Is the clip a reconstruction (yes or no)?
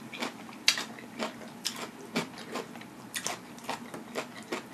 no